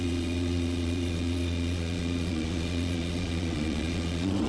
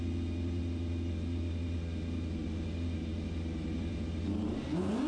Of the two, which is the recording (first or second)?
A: second